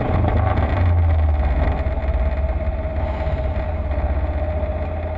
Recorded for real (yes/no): yes